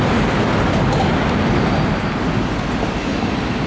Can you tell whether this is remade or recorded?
recorded